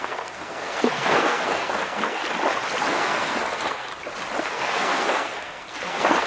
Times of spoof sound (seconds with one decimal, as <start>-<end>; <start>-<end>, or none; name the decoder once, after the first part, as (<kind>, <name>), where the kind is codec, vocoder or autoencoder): 0.0-2.2 (codec, SNAC); 2.9-3.9; 4.4-6.3